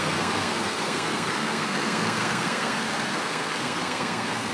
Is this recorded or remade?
remade